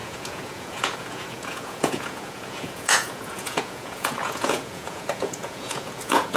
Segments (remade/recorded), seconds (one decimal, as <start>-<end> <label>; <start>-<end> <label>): 0.0-6.4 remade